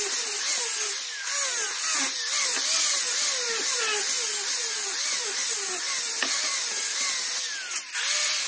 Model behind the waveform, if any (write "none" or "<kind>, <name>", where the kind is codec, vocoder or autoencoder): none